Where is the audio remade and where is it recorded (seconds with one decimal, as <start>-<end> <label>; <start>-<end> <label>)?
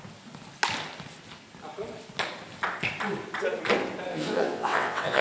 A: 0.0-4.1 recorded; 4.1-5.2 remade